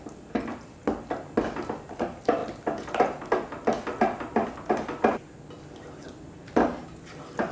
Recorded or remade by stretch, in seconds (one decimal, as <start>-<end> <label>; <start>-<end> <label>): 0.0-7.5 recorded